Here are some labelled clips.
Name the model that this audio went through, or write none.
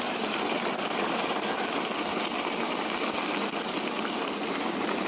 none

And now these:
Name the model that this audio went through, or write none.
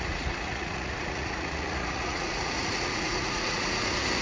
vocoder, Vocos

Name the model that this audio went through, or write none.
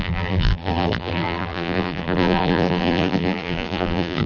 vocoder, BigVGAN v2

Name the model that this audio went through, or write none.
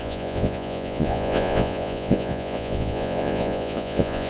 vocoder, Vocos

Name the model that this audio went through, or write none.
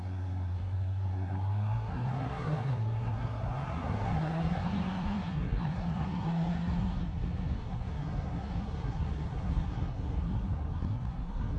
codec, SNAC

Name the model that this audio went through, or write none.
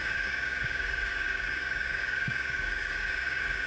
codec, DAC